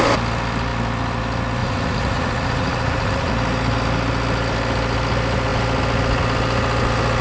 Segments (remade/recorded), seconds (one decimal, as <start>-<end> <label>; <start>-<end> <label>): 0.0-1.6 recorded; 1.6-3.3 remade; 3.3-7.2 recorded